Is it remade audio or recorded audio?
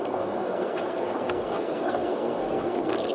remade